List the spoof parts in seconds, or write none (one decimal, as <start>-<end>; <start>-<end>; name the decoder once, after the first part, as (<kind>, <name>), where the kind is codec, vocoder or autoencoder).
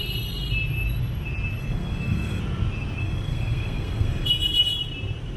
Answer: 1.6-2.4 (codec, SNAC); 3.0-4.3